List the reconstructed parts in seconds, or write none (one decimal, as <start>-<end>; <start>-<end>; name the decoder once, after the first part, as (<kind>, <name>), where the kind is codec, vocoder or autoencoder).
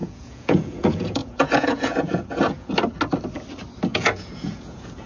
0.0-2.7 (vocoder, Vocos); 3.9-5.1